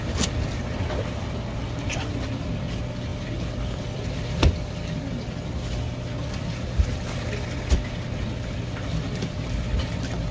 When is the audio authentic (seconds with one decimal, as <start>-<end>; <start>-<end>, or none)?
0.0-10.3